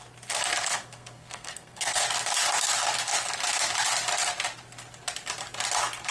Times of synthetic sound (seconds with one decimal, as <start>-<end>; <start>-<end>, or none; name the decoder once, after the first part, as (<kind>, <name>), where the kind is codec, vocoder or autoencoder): 0.7-2.0 (codec, SNAC)